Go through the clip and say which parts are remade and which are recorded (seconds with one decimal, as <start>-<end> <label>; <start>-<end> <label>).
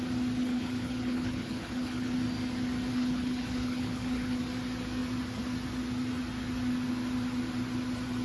0.0-0.4 recorded; 0.4-2.1 remade; 2.1-2.9 recorded; 2.9-4.4 remade; 4.4-8.2 recorded